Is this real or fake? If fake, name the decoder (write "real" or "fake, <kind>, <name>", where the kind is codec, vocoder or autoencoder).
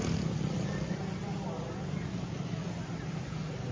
real